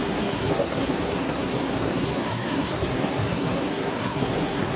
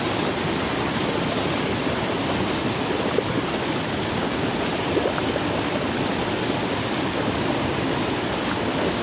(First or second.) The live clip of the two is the second